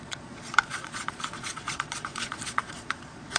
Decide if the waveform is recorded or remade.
remade